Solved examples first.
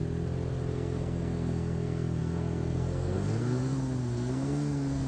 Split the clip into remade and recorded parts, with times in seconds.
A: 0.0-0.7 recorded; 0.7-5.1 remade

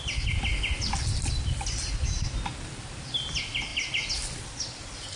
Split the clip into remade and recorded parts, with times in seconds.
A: 0.0-5.2 recorded

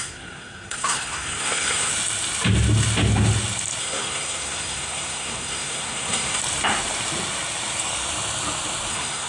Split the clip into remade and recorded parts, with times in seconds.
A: 0.0-1.9 remade; 1.9-3.8 recorded; 3.8-6.4 remade; 6.4-8.9 recorded; 8.9-9.3 remade

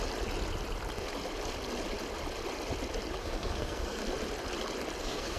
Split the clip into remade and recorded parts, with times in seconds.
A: 0.0-3.2 recorded; 3.2-4.0 remade; 4.0-5.0 recorded; 5.0-5.4 remade